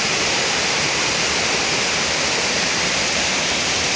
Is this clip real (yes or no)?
yes